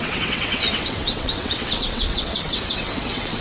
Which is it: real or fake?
fake